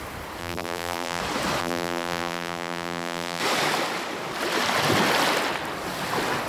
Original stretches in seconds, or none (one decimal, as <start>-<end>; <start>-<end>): 0.0-0.4; 1.2-1.6; 3.4-6.5